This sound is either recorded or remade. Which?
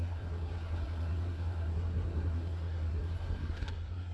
remade